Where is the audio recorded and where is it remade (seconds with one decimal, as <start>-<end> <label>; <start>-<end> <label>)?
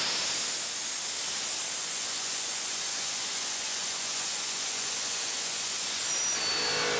0.0-1.8 recorded; 1.8-6.0 remade; 6.0-7.0 recorded